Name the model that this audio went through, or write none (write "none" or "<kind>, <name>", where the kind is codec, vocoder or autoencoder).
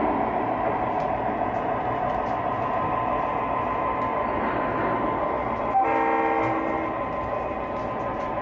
none